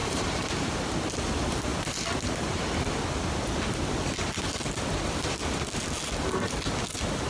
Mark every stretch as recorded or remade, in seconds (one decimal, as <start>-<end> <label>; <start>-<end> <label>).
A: 0.0-0.8 remade; 0.8-7.3 recorded